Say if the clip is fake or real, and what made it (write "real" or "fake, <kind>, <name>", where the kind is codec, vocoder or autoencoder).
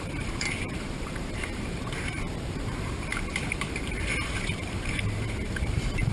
fake, vocoder, BigVGAN v2